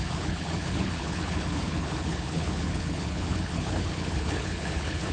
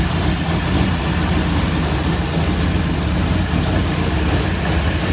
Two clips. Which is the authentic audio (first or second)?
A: second